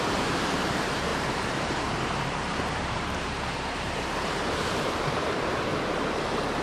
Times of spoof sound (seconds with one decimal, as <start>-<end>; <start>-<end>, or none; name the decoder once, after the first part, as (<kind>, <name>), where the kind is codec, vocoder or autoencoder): 0.0-5.7 (vocoder, BigVGAN v2)